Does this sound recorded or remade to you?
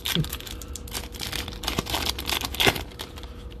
recorded